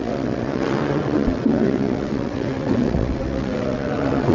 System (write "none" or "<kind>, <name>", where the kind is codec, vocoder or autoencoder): vocoder, WaveNeXt